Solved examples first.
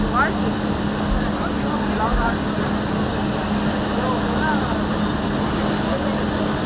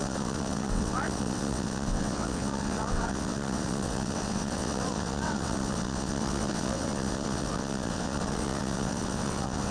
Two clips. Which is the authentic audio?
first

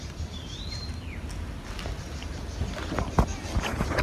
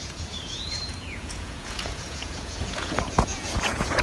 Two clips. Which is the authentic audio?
first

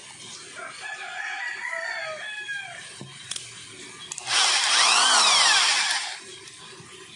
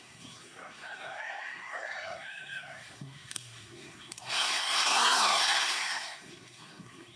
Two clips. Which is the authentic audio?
first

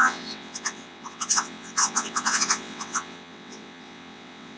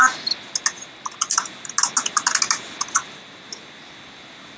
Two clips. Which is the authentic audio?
second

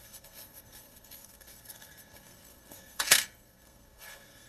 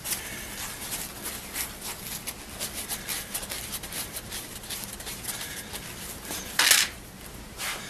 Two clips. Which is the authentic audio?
second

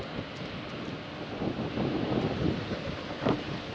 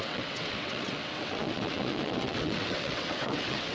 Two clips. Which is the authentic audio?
first